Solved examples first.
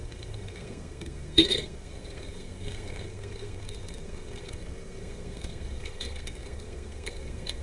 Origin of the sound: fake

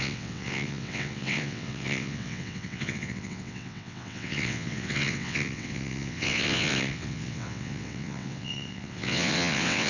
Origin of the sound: fake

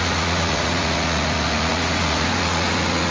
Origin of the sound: fake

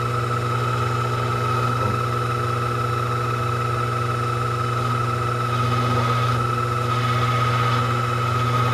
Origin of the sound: real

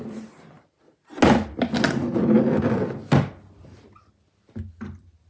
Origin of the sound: real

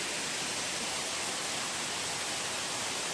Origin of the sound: real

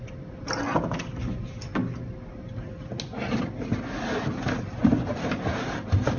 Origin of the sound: real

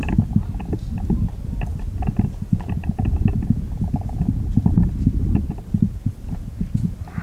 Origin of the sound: real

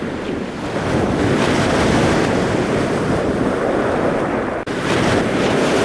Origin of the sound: real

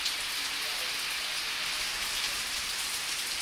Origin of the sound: real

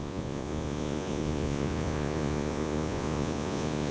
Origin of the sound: fake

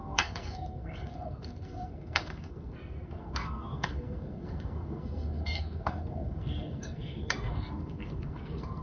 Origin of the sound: fake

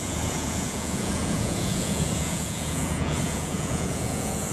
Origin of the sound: fake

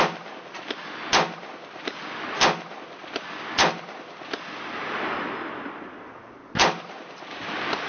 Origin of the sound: real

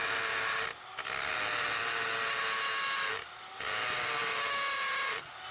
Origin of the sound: real